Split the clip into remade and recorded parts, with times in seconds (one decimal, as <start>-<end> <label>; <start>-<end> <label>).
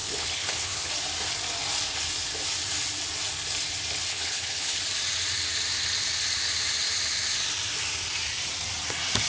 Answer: 0.0-0.9 remade; 0.9-4.1 recorded; 4.1-4.8 remade; 4.8-9.3 recorded